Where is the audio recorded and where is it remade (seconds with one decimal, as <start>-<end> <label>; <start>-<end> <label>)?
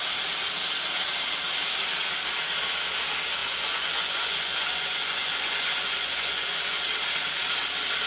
0.0-3.4 recorded; 3.4-6.8 remade; 6.8-8.1 recorded